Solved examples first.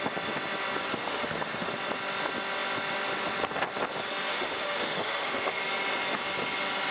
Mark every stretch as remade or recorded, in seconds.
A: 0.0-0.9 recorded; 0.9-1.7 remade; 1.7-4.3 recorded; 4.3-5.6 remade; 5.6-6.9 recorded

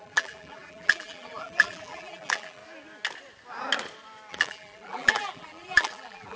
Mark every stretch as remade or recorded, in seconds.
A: 0.0-2.6 remade; 2.6-4.3 recorded; 4.3-6.4 remade

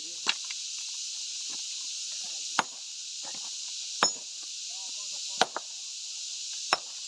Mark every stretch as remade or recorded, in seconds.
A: 0.0-7.1 recorded

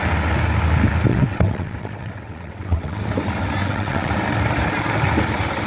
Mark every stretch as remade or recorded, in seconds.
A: 0.0-1.1 recorded; 1.1-3.0 remade; 3.0-3.6 recorded; 3.6-4.1 remade; 4.1-5.7 recorded

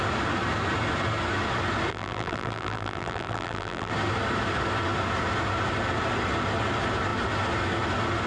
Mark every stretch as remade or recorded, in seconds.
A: 0.0-1.9 recorded; 1.9-3.9 remade; 3.9-8.3 recorded

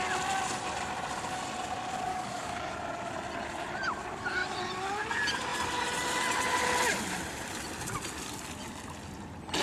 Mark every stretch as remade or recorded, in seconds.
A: 0.0-2.1 recorded; 2.1-2.7 remade; 2.7-9.6 recorded

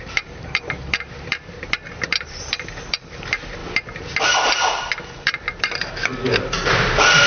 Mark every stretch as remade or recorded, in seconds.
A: 0.0-7.3 remade